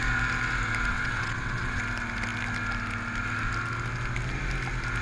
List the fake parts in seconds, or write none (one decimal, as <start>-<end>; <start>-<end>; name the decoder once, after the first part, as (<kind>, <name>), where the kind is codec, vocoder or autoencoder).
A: 0.9-1.8 (vocoder, WaveNeXt)